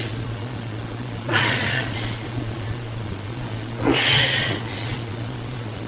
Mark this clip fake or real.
fake